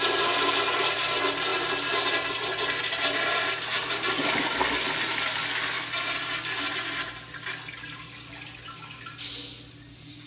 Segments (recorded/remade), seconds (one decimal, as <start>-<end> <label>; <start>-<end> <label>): 0.0-10.3 recorded